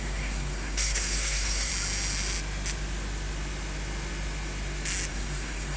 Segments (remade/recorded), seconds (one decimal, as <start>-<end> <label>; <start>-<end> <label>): 0.0-1.7 remade; 1.7-5.1 recorded; 5.1-5.8 remade